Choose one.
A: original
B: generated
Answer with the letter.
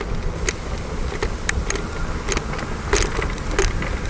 A